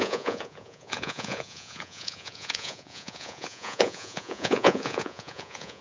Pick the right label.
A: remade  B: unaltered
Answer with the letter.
A